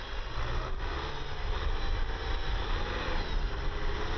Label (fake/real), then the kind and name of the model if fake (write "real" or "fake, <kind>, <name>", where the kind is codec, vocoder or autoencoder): real